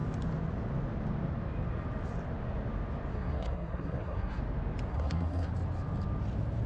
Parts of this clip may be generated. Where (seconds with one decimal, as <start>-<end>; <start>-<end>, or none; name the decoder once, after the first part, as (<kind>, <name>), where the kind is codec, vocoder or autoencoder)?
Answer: 3.1-4.4 (codec, SNAC); 4.9-5.5